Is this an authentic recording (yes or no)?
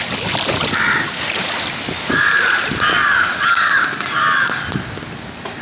yes